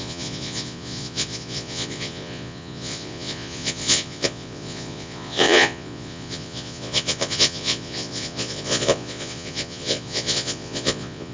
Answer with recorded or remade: remade